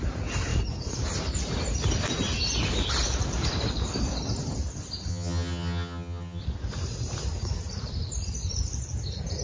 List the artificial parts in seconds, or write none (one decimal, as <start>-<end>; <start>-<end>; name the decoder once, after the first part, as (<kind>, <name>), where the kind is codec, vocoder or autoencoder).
5.1-6.4 (vocoder, HiFi-GAN)